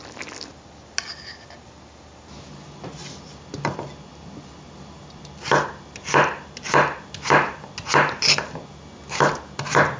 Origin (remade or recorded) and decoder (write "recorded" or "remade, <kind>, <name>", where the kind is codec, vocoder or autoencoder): recorded